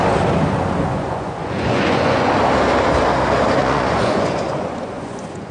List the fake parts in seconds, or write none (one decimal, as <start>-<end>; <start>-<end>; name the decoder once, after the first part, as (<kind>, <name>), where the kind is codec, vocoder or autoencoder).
0.9-2.3 (vocoder, Vocos); 3.6-5.5